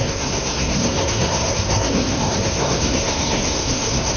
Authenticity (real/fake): fake